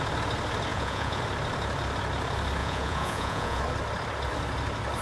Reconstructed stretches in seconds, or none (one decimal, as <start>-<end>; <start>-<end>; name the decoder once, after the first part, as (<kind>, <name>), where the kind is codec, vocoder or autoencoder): 0.7-1.2 (vocoder, Vocos); 2.6-3.6